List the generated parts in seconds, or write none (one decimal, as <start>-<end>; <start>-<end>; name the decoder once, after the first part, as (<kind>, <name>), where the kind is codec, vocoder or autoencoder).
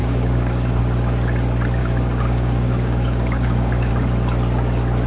0.0-0.8 (codec, DAC); 1.8-3.9